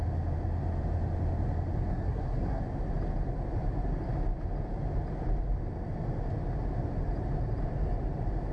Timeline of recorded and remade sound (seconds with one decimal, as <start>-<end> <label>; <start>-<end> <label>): 0.0-1.9 recorded; 1.9-2.6 remade; 2.6-8.5 recorded